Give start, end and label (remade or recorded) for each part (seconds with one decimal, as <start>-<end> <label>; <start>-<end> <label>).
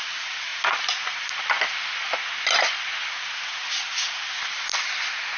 0.0-5.4 recorded